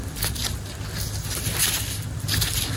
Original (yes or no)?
no